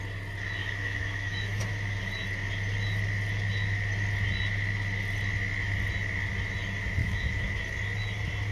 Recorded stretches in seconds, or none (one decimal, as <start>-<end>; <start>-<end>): 0.0-0.6; 1.6-7.0; 7.6-8.5